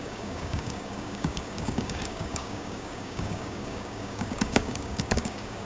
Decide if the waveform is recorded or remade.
remade